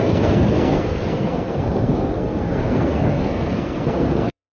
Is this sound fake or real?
fake